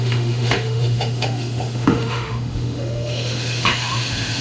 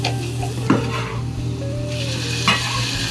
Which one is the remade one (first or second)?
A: first